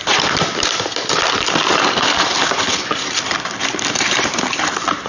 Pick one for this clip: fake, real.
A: fake